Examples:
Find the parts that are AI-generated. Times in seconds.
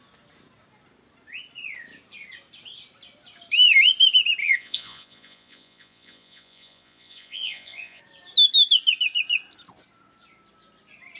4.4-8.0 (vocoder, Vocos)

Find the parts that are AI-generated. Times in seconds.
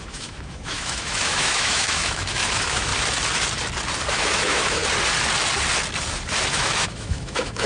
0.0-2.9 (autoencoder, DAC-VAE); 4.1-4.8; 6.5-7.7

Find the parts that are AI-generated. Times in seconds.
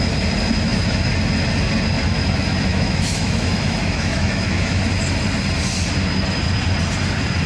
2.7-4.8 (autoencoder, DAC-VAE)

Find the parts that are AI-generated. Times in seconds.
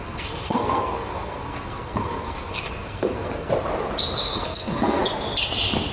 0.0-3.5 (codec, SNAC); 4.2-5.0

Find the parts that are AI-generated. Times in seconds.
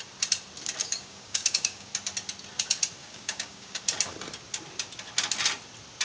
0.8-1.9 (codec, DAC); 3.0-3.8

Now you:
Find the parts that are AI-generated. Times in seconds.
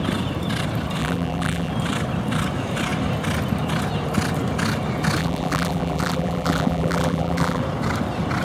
1.0-1.7 (vocoder, BigVGAN v2); 5.2-7.6